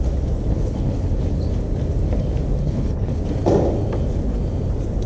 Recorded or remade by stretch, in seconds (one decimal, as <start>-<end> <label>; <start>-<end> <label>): 0.0-0.5 recorded; 0.5-1.2 remade; 1.2-2.6 recorded; 2.6-3.2 remade; 3.2-5.1 recorded